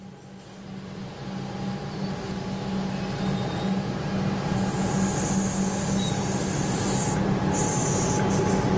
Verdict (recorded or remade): recorded